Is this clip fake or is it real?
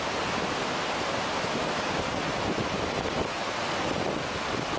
real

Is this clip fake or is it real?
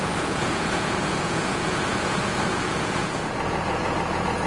fake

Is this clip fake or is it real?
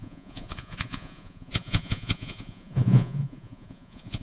fake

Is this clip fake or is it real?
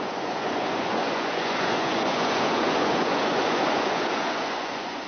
fake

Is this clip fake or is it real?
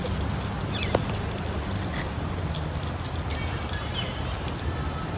real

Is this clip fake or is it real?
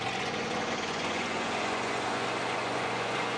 fake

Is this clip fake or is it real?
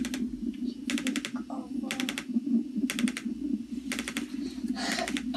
real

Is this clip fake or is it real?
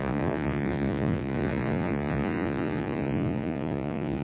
fake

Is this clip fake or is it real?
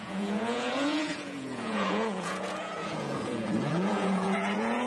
fake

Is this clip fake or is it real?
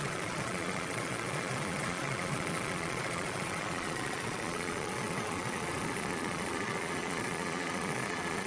fake